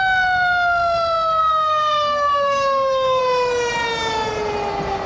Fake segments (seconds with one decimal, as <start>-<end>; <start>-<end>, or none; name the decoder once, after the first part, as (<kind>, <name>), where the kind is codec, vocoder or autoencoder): 1.4-3.2 (codec, SNAC)